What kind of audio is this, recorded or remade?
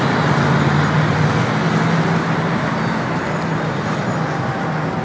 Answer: recorded